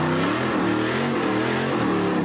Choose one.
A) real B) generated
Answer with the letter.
A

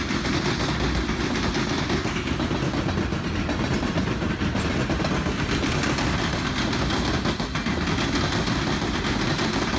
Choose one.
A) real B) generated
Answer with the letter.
A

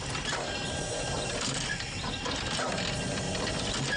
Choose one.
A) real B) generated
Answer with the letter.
A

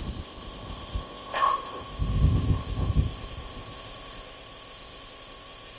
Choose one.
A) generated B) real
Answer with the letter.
A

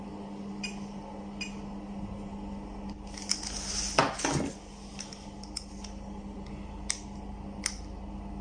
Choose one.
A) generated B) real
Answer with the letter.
B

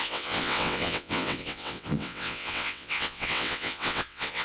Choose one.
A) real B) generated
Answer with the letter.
B